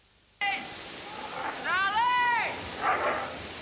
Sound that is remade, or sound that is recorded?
remade